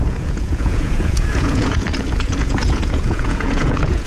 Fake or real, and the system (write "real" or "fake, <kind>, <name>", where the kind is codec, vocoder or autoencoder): fake, vocoder, Vocos